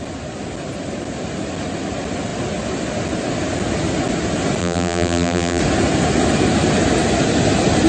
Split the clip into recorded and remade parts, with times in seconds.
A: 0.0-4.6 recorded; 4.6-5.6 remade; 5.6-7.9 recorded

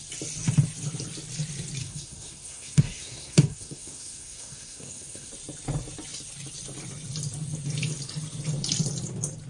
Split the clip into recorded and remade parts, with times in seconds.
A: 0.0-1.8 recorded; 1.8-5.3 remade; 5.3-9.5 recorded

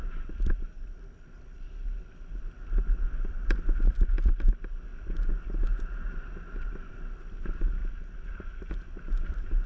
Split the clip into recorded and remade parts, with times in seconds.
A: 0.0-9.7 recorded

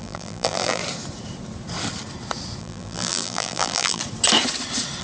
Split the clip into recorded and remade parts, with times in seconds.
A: 0.0-0.8 remade; 0.8-2.6 recorded; 2.6-4.0 remade; 4.0-5.0 recorded

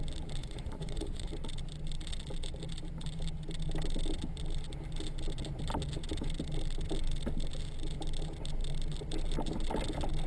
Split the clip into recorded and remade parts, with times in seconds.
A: 0.0-0.4 recorded; 0.4-1.3 remade; 1.3-10.3 recorded

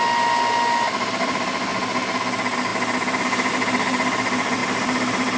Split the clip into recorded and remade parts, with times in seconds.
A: 0.0-5.4 recorded

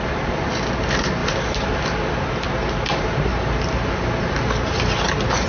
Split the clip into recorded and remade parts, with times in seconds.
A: 0.0-5.5 recorded

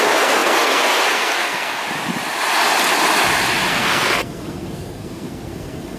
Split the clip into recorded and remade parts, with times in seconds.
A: 0.0-1.8 remade; 1.8-3.7 recorded; 3.7-6.0 remade